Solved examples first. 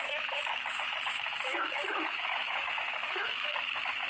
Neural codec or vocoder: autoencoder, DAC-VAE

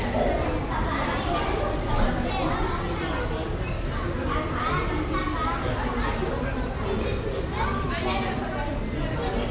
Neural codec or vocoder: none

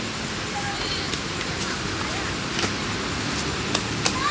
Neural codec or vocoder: none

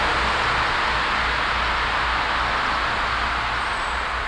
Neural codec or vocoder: none